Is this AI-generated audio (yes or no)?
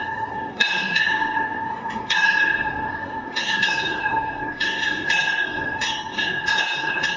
yes